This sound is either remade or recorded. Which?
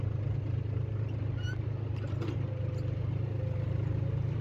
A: recorded